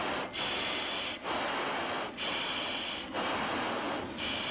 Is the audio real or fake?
real